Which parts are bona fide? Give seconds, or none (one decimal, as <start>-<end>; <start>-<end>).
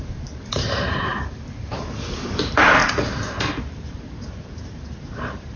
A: 1.1-2.4; 2.8-3.6